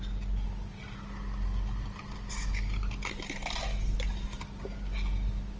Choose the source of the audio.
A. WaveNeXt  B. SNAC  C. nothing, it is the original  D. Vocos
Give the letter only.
C